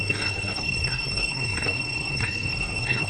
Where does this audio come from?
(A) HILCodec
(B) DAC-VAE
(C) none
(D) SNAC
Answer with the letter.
D